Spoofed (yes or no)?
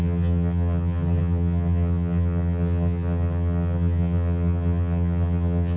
yes